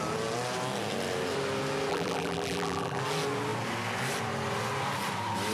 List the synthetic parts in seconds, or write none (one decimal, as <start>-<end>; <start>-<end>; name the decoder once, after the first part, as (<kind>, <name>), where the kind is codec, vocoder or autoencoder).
1.9-3.0 (vocoder, BigVGAN v2)